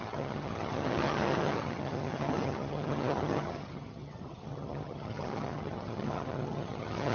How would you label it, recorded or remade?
remade